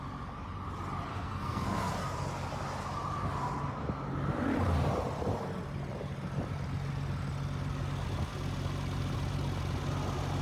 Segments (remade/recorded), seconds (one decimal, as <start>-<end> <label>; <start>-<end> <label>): 0.0-1.1 recorded; 1.1-1.9 remade; 1.9-10.4 recorded